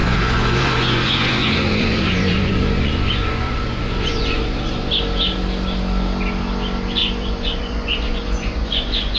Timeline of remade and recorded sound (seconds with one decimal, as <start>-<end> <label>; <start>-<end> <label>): 0.0-4.9 remade; 4.9-7.0 recorded; 7.0-9.2 remade